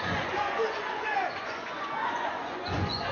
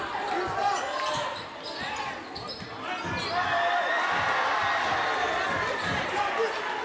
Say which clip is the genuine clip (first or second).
second